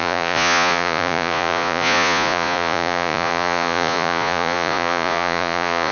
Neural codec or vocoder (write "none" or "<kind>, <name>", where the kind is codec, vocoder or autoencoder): vocoder, Vocos